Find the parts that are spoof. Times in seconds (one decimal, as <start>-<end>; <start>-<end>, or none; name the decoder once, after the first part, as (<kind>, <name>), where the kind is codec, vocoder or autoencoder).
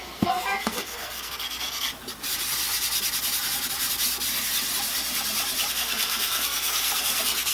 0.0-1.9 (codec, SNAC); 5.7-7.5